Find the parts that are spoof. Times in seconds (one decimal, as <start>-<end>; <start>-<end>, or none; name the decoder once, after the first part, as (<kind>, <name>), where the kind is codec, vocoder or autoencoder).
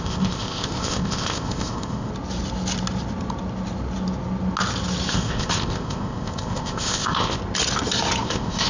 0.0-2.1 (codec, ZipCodec); 5.1-7.4; 8.2-8.7